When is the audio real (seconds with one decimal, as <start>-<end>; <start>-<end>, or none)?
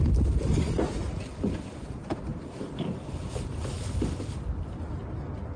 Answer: 0.0-2.3; 3.7-5.6